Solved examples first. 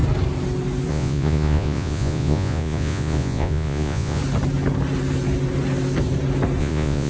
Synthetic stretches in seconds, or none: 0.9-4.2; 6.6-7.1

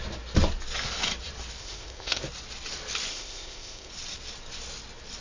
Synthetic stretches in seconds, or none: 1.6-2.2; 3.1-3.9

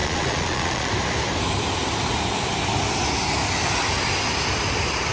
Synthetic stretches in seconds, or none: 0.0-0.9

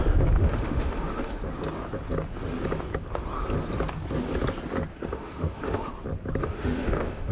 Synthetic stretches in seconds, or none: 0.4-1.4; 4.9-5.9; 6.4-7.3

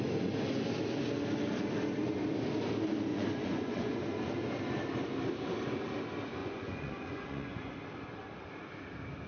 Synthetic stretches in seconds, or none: 3.1-4.0; 6.4-7.7

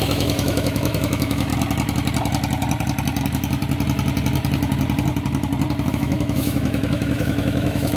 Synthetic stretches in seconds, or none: 0.0-1.5; 5.9-8.0